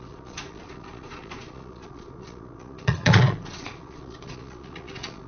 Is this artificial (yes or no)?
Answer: yes